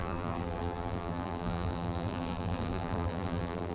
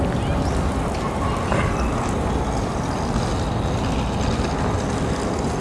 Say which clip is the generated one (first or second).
first